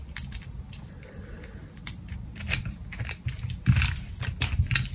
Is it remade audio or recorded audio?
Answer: recorded